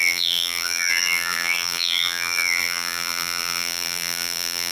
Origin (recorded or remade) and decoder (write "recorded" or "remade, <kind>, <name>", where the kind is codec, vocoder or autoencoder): remade, vocoder, BigVGAN v2